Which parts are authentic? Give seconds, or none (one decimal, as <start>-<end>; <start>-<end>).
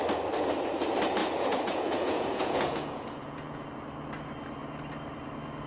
0.0-1.2; 3.7-5.7